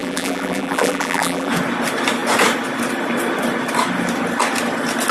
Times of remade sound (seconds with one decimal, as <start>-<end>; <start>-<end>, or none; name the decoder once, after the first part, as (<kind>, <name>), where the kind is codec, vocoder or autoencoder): 0.0-1.5 (vocoder, BigVGAN v2)